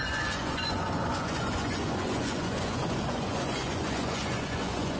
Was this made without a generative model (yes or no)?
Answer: no